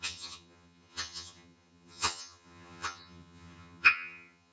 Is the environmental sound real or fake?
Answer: fake